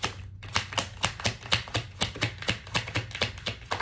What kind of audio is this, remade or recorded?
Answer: recorded